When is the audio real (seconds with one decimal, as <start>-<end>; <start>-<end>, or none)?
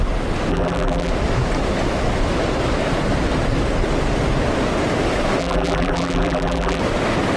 0.0-0.5; 1.1-5.4; 6.8-7.4